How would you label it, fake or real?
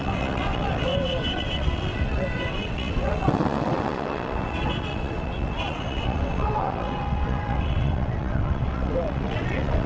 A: fake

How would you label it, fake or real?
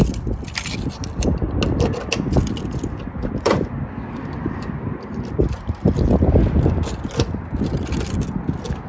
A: real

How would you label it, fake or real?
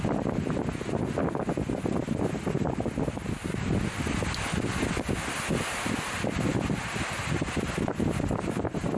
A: real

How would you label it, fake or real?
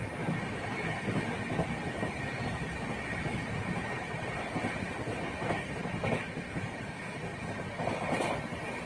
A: real